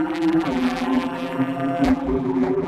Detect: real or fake fake